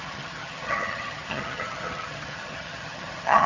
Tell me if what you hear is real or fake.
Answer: fake